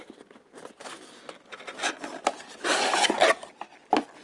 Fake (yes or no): no